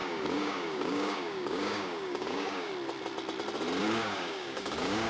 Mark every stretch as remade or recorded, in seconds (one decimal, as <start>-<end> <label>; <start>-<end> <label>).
0.0-2.7 remade; 2.7-3.8 recorded; 3.8-5.1 remade